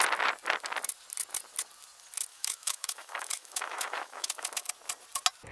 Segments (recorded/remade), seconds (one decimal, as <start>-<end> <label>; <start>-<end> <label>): 0.0-2.3 recorded; 2.3-4.7 remade; 4.7-5.5 recorded